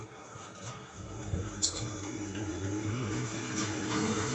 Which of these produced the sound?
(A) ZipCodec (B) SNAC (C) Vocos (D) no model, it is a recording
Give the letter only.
B